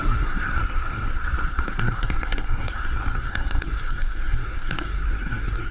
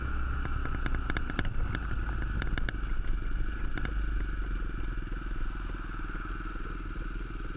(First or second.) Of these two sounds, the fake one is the first